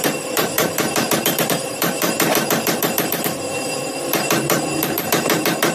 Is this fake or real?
fake